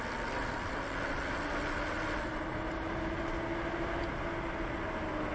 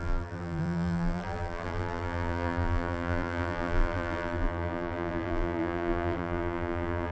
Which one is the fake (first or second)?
second